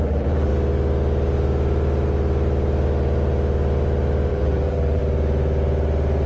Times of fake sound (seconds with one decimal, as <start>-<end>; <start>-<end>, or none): 0.0-0.5; 4.3-5.0